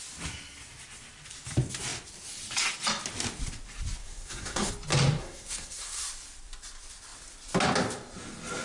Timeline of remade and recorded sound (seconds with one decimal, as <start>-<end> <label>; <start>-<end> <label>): 0.0-4.0 recorded; 4.0-4.7 remade; 4.7-5.2 recorded; 5.2-6.0 remade; 6.0-8.6 recorded